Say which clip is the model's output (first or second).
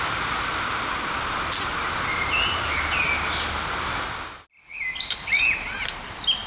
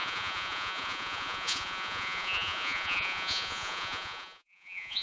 second